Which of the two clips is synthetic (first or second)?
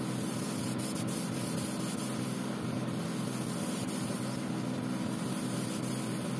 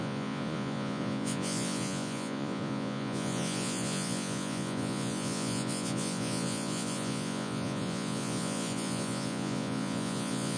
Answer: second